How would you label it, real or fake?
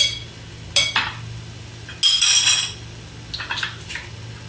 real